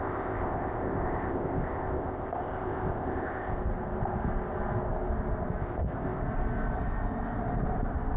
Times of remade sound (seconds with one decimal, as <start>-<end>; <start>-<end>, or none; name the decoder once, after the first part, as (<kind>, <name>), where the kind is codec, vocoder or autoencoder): 0.0-3.6 (codec, ZipCodec); 5.6-6.2